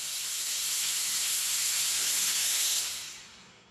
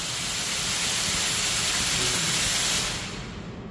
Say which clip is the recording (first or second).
second